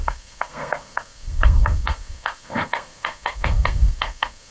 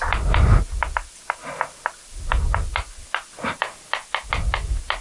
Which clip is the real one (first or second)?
second